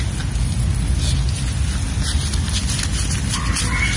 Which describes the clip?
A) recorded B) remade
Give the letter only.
A